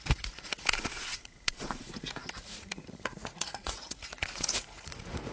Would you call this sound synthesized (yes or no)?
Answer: yes